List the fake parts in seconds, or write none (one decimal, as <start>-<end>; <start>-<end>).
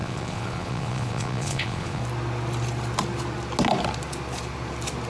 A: 0.0-2.0